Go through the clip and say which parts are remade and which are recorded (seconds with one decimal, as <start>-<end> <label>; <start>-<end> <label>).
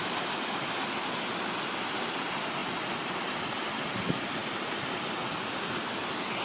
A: 0.0-6.4 recorded